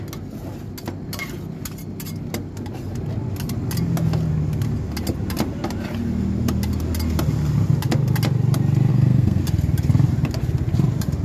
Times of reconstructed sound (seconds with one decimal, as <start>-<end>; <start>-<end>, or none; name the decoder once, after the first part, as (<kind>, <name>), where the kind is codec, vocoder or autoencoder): 8.9-9.4 (codec, SNAC)